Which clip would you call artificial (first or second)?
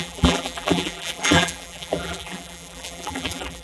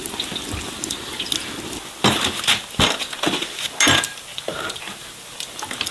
first